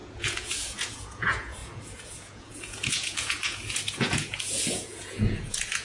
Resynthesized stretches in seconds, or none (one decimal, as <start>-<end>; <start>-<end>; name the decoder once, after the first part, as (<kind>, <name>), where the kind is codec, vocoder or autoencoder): 0.0-5.8 (vocoder, Vocos)